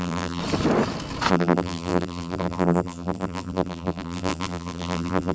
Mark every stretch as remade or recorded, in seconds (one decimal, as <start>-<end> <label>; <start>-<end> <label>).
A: 0.0-0.4 remade; 0.4-1.3 recorded; 1.3-5.3 remade